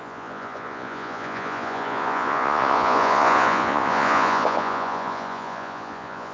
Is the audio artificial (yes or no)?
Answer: yes